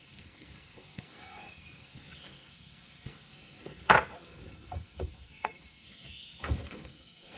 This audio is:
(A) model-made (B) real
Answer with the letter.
A